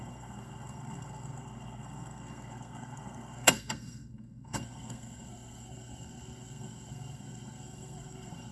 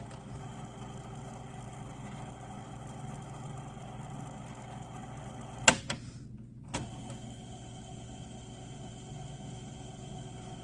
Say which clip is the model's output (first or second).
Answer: first